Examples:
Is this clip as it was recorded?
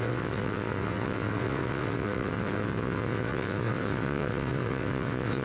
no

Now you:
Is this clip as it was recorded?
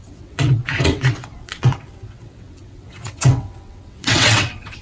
no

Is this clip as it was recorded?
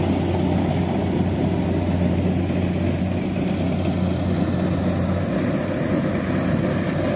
yes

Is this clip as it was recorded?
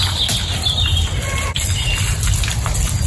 yes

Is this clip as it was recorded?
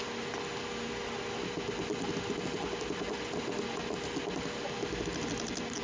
yes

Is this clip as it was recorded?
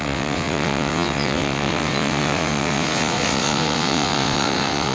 no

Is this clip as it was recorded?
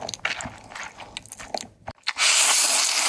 yes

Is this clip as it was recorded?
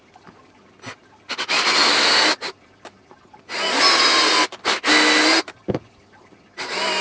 yes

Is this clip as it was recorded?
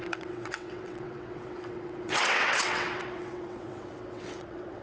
no